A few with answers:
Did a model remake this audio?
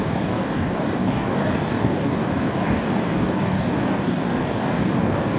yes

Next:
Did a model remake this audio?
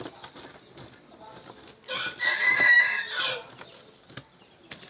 no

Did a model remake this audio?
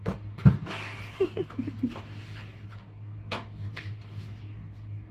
yes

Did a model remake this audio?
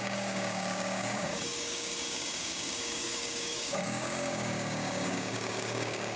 yes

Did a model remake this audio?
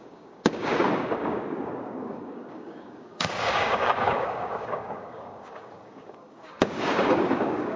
yes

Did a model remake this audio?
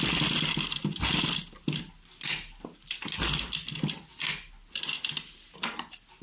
no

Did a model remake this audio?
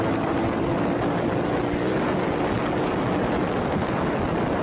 no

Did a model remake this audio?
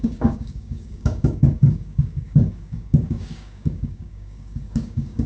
yes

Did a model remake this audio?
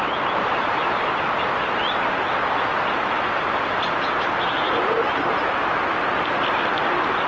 no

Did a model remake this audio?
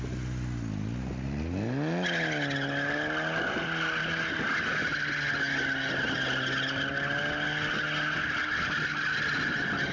no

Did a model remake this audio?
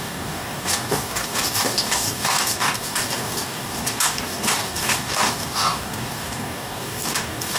yes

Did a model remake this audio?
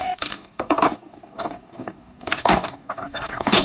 yes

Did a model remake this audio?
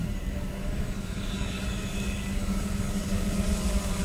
yes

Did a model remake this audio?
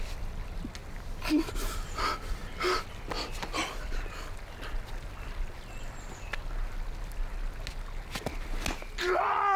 no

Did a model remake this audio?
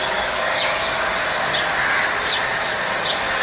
no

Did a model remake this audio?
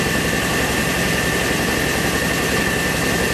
no